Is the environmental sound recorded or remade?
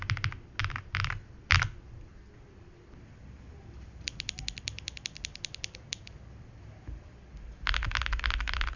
recorded